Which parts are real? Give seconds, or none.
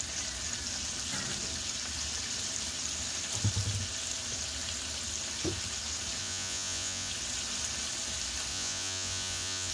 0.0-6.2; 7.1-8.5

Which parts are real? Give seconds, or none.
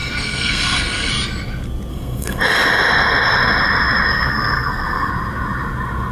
1.1-1.9; 2.4-4.1; 5.1-6.1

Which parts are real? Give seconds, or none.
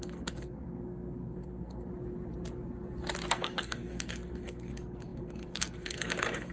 1.9-3.3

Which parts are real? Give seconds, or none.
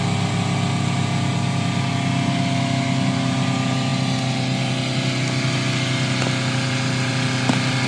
0.0-7.9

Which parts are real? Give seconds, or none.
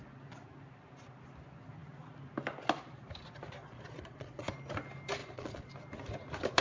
0.0-3.6; 4.5-5.2; 5.7-6.6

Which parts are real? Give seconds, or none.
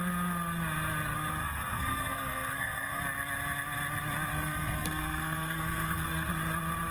0.0-1.4; 3.0-4.3; 6.3-6.9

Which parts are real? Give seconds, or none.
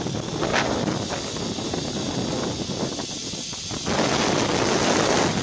0.0-5.4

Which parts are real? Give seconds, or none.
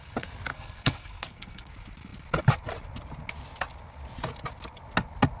0.0-0.5; 1.7-5.4